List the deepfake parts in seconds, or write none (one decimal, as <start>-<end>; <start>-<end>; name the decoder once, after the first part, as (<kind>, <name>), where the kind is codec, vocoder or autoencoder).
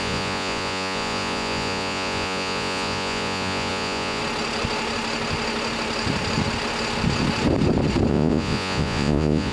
0.0-4.2 (vocoder, Vocos); 8.1-9.5